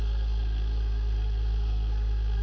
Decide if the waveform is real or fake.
fake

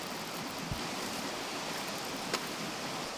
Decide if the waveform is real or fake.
real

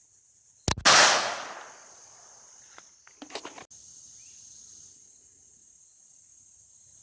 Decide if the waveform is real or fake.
real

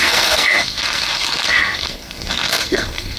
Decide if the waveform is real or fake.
fake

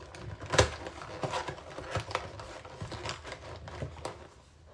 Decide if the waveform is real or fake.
real